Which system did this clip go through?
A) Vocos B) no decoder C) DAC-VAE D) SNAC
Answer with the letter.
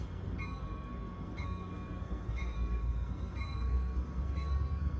D